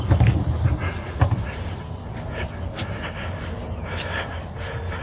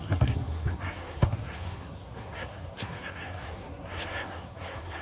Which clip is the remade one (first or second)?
second